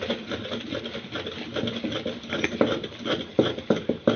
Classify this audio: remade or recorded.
recorded